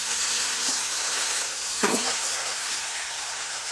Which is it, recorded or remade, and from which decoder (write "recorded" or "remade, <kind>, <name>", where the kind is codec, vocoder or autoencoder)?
remade, codec, SNAC